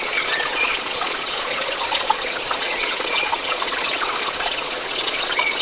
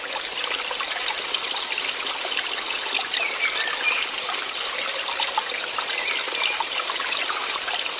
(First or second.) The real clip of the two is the second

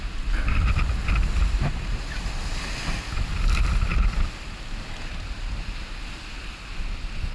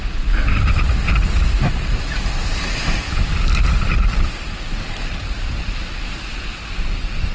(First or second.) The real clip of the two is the first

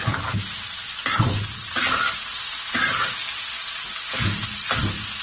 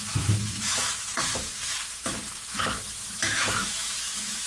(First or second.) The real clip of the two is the first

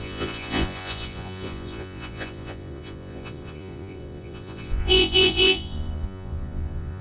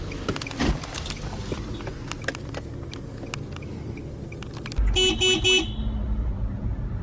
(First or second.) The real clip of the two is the second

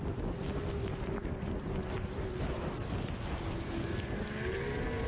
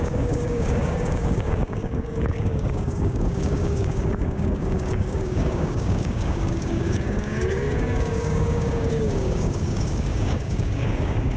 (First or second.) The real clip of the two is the first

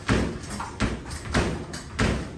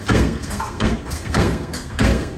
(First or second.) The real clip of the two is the first